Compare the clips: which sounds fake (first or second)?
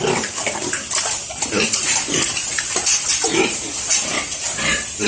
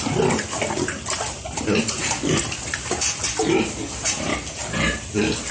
first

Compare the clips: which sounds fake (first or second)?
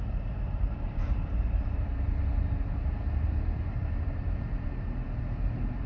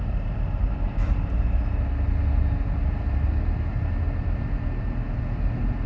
first